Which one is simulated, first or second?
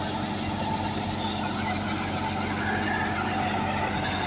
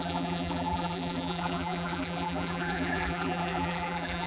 second